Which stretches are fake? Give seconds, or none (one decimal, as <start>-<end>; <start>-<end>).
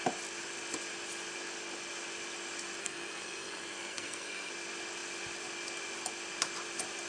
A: 2.8-4.5